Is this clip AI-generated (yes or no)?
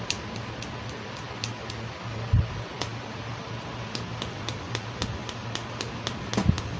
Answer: no